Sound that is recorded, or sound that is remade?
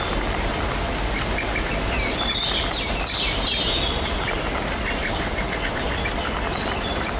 recorded